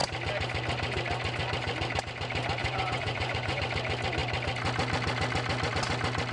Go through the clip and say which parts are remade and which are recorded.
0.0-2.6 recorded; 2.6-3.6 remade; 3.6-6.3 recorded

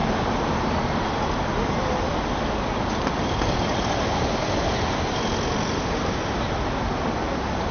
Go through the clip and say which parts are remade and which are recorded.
0.0-7.7 recorded

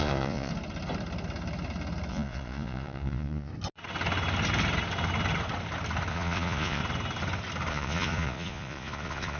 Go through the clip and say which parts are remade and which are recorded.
0.0-0.5 remade; 0.5-2.1 recorded; 2.1-3.5 remade; 3.5-6.1 recorded; 6.1-6.8 remade; 6.8-7.7 recorded; 7.7-9.4 remade